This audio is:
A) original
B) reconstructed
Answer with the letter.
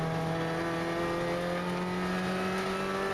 A